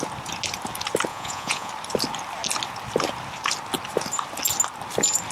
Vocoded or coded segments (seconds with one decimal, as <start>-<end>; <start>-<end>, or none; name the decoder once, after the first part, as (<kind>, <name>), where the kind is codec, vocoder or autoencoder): 1.1-1.7 (vocoder, Vocos)